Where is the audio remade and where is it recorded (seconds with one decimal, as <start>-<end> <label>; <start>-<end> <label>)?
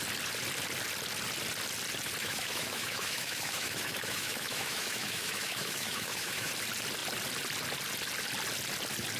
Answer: 0.0-2.2 recorded; 2.2-6.5 remade; 6.5-9.2 recorded